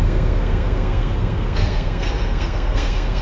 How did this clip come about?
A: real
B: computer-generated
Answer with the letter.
B